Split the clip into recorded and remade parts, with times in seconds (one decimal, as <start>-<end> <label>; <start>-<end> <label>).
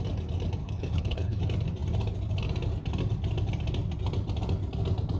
0.0-0.6 recorded; 0.6-1.4 remade; 1.4-5.2 recorded